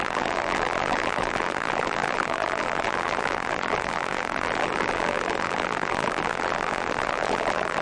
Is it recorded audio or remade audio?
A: remade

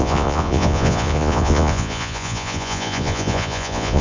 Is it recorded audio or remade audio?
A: remade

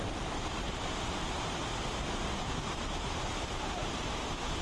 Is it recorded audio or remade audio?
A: recorded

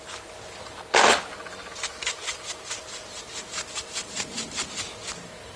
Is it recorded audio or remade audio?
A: recorded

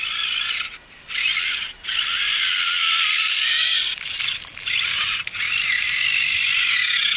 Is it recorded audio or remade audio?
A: recorded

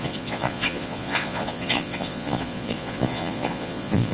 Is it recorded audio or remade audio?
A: remade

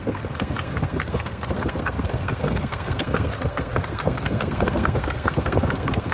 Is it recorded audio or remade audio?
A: remade